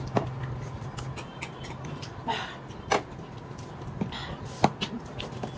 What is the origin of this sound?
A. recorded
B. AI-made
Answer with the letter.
A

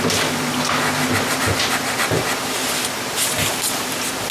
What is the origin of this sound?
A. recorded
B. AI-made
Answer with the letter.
A